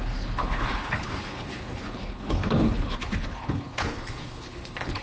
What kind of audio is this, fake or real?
fake